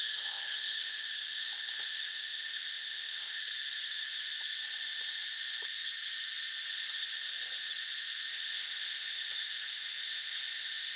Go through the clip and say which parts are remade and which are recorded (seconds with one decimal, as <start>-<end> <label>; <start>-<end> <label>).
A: 0.0-3.4 remade; 3.4-8.3 recorded; 8.3-11.0 remade